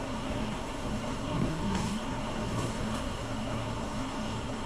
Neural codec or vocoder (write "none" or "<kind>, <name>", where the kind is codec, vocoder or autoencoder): codec, SNAC